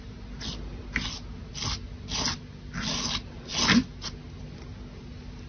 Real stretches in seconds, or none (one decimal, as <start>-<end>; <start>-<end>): 0.0-5.5